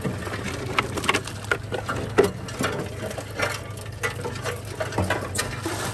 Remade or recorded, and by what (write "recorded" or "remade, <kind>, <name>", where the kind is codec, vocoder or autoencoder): recorded